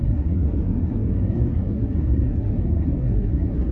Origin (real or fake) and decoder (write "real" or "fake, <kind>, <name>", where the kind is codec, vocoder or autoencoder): fake, codec, SNAC